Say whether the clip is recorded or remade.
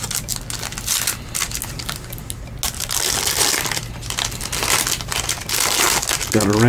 recorded